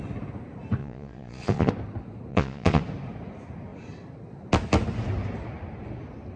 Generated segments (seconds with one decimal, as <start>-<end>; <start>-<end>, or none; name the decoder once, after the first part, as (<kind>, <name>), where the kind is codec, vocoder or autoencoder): 0.8-1.7 (vocoder, Vocos); 2.3-2.8